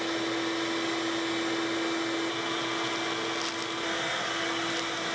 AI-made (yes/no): no